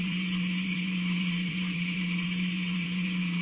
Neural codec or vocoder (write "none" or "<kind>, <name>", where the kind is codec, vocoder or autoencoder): vocoder, BigVGAN v2